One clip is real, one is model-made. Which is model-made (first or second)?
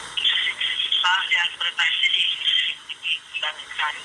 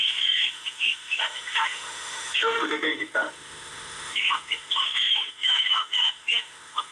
second